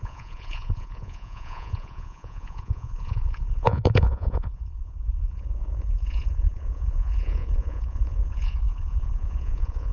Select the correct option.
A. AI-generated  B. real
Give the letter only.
A